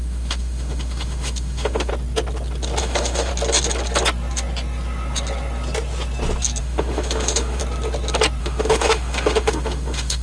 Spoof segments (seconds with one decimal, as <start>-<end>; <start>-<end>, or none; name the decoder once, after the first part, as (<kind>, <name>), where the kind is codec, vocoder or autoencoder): 0.0-1.9 (autoencoder, DAC-VAE); 2.8-3.3; 6.6-7.6; 8.4-10.2